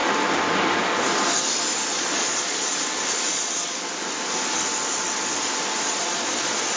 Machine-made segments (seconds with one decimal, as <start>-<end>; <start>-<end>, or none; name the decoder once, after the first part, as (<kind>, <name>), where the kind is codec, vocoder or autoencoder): 1.9-2.7 (vocoder, Vocos); 5.8-6.8

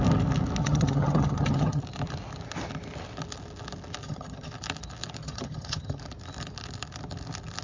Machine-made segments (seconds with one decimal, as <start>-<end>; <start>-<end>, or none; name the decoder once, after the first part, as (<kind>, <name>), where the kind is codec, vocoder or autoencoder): 0.6-1.8 (vocoder, HiFi-GAN); 4.0-4.5; 5.2-6.0

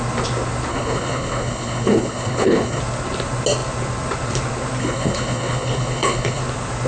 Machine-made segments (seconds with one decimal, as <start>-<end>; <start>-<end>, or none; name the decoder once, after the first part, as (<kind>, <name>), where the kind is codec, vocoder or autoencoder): 0.7-2.8 (codec, HILCodec); 4.8-6.4

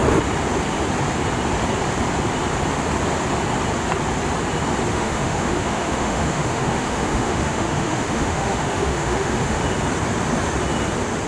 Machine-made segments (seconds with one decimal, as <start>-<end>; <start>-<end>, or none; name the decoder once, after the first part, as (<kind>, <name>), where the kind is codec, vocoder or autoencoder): 4.9-9.6 (autoencoder, DAC-VAE)

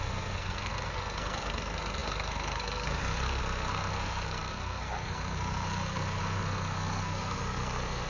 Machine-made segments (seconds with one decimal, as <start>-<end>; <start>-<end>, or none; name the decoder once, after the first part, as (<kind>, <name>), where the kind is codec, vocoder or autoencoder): 0.0-8.1 (codec, SNAC)

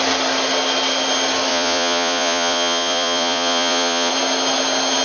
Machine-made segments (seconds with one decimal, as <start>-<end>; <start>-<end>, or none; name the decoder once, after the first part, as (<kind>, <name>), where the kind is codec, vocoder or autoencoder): 1.5-4.1 (vocoder, Vocos)